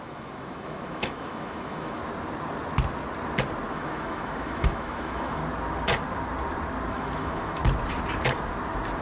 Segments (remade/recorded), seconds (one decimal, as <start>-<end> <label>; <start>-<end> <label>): 0.0-2.0 remade; 2.0-3.7 recorded; 3.7-5.4 remade; 5.4-6.9 recorded; 6.9-7.6 remade; 7.6-9.0 recorded

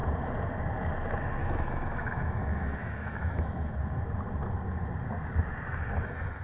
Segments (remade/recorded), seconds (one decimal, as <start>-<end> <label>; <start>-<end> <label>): 0.0-1.4 recorded; 1.4-3.7 remade; 3.7-6.4 recorded